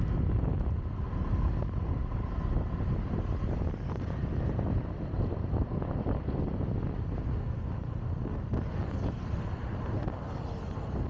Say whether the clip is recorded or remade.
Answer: recorded